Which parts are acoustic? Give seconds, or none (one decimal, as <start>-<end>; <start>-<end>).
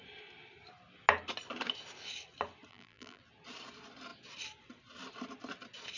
0.0-2.7; 3.2-6.0